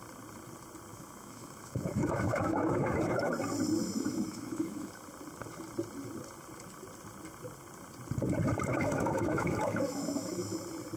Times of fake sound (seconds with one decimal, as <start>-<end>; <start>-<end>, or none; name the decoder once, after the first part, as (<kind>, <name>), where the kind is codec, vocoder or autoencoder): 0.9-3.3 (autoencoder, DAC-VAE); 3.8-4.9; 8.7-10.6